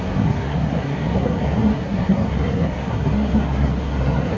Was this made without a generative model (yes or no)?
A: no